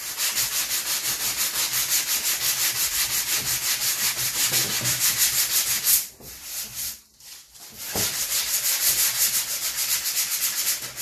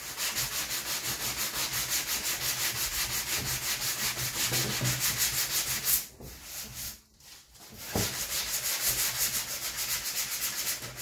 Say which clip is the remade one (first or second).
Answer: first